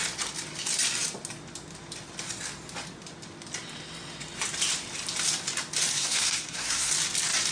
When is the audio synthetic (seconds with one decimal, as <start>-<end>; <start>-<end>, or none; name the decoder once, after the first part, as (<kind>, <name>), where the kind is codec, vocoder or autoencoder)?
5.9-6.9 (codec, SNAC)

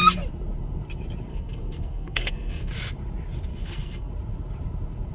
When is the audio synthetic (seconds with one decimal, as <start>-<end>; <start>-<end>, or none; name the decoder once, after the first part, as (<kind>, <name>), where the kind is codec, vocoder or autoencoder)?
1.3-2.7 (codec, SNAC); 3.5-4.1

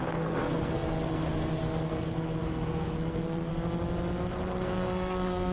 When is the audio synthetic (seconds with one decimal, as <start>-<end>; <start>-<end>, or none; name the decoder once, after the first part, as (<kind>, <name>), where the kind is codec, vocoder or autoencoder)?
0.0-3.5 (codec, SNAC); 4.3-5.5

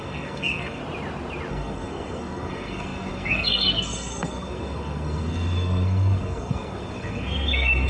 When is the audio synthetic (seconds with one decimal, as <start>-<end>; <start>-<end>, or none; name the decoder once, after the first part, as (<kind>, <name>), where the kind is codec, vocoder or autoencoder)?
0.0-0.8 (codec, SNAC); 1.5-7.9

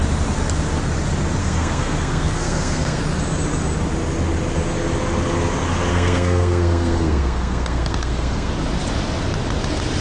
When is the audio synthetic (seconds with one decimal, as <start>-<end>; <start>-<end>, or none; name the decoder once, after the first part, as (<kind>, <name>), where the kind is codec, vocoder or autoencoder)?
1.4-3.0 (codec, SNAC); 5.9-8.5

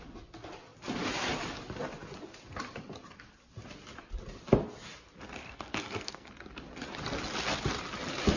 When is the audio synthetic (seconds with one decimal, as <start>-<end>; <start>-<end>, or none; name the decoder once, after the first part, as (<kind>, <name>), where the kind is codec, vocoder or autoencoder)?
5.4-6.3 (codec, SNAC)

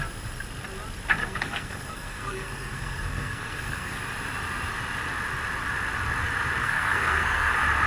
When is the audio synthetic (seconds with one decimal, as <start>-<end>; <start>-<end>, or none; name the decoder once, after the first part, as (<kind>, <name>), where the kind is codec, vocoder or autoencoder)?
1.2-4.0 (codec, SNAC); 6.6-7.5